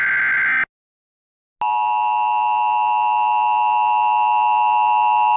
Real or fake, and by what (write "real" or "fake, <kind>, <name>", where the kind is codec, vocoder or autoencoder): real